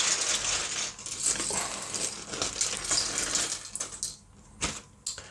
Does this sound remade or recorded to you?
recorded